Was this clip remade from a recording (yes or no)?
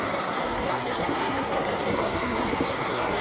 yes